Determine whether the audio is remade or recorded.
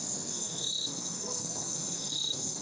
remade